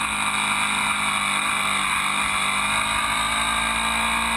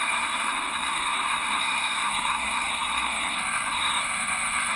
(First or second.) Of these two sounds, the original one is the first